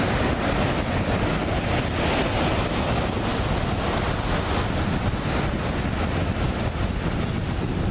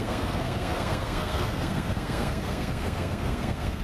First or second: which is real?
first